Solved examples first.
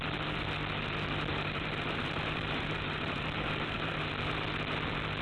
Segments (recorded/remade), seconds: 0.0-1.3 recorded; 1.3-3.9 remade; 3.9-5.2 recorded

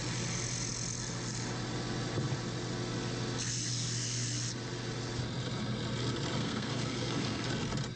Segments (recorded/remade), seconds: 0.0-6.4 recorded; 6.4-7.5 remade; 7.5-8.0 recorded

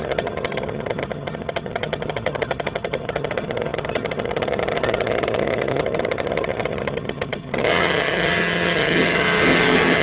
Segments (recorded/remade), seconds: 0.0-10.0 remade

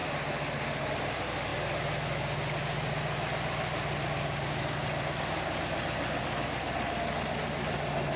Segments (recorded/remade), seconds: 0.0-8.2 recorded

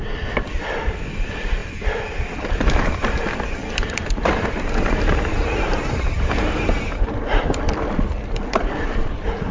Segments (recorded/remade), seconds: 0.0-1.6 remade; 1.6-2.6 recorded; 2.6-9.5 remade

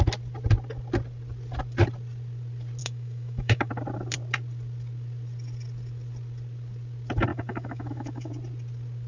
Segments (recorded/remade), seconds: 0.0-2.8 recorded; 2.8-3.7 remade; 3.7-7.3 recorded; 7.3-8.3 remade; 8.3-9.1 recorded